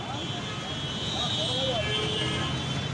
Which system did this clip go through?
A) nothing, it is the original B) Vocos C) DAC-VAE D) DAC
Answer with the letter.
A